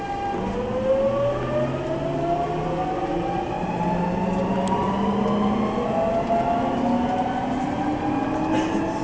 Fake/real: real